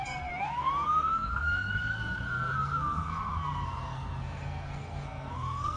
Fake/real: fake